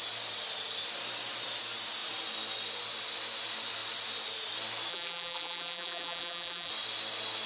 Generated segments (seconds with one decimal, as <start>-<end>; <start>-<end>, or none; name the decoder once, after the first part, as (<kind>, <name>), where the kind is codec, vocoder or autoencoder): 4.9-6.7 (vocoder, BigVGAN v2)